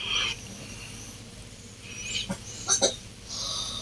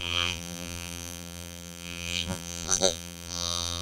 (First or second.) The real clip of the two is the first